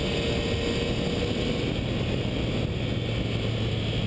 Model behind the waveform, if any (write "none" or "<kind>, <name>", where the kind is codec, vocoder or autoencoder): none